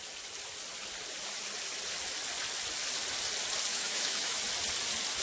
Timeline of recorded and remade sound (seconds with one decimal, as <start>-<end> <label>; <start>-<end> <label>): 0.0-3.7 recorded; 3.7-4.4 remade; 4.4-5.2 recorded